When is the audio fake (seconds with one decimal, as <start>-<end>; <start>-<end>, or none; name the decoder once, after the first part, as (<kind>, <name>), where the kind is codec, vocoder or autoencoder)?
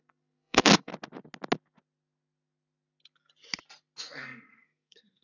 0.0-0.9 (codec, SNAC); 4.0-5.2